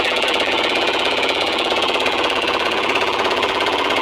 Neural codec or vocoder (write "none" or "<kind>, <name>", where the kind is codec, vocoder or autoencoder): vocoder, BigVGAN v2